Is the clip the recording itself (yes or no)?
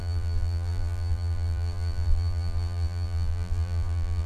no